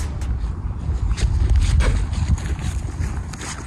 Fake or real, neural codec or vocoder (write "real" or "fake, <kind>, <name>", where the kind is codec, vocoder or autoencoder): real